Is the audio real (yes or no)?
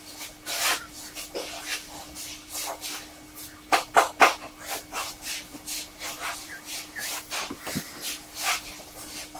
yes